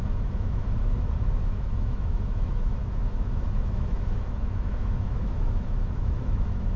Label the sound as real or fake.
fake